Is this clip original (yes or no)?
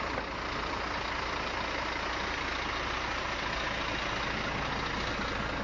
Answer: yes